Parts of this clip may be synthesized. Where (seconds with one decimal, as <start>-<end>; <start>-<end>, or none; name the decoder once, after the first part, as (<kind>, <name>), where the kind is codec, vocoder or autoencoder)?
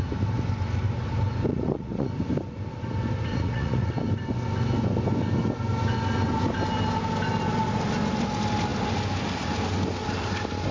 1.5-2.1 (vocoder, Vocos); 3.3-3.9